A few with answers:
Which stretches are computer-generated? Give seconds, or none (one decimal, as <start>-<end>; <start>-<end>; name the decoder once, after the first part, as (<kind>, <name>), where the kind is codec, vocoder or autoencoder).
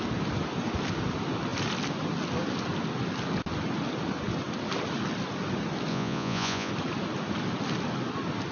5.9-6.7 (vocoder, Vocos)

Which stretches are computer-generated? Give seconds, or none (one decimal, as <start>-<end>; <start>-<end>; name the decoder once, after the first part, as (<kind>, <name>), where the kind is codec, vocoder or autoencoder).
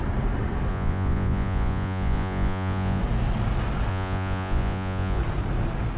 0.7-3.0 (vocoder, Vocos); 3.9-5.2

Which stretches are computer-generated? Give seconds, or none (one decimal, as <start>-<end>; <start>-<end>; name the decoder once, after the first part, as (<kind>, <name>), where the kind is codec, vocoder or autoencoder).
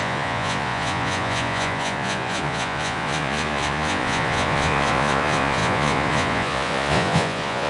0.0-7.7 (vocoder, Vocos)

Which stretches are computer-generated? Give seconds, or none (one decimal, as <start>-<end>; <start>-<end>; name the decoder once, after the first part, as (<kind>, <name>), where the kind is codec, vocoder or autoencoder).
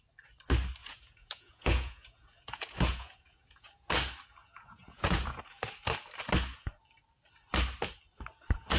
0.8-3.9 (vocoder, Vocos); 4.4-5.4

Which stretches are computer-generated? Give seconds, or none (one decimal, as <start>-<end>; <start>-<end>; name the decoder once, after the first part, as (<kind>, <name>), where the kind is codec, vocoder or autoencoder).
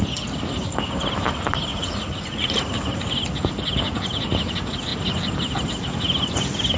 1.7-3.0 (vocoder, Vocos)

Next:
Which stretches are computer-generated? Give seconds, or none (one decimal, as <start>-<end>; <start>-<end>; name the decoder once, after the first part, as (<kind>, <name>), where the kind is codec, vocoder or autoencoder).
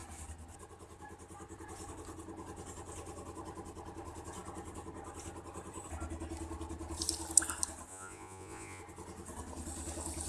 7.9-8.8 (vocoder, Vocos)